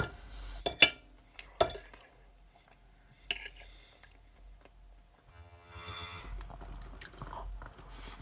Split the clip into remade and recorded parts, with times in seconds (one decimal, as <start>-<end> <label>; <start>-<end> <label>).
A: 0.0-5.3 recorded; 5.3-6.2 remade; 6.2-8.2 recorded